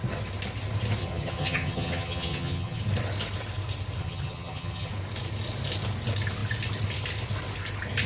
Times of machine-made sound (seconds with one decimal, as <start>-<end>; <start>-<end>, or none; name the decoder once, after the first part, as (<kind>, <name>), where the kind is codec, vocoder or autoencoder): 1.0-2.8 (vocoder, HiFi-GAN); 4.0-4.9